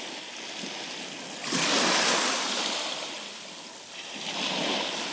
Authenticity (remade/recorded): recorded